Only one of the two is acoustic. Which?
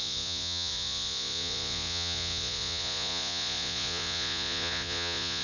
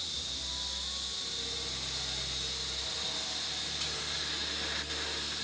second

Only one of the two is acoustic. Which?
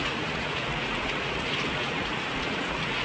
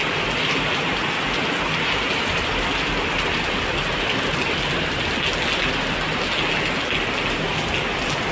second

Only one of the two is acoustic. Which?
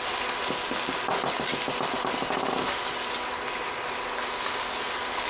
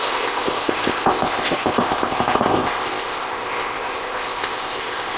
first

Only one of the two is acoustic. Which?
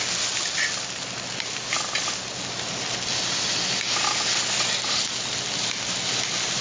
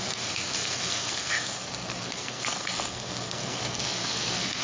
first